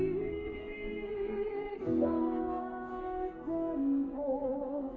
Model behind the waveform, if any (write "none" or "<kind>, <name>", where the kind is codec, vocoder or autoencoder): codec, SNAC